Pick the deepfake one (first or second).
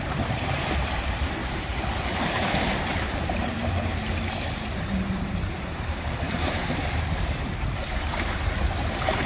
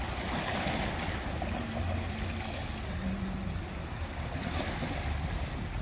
first